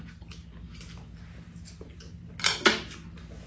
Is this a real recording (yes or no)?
yes